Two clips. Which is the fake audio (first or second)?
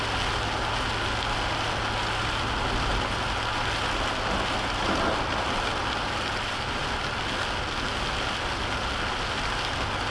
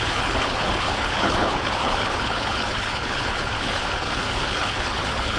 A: second